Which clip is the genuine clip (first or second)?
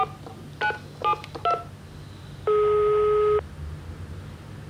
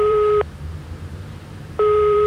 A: first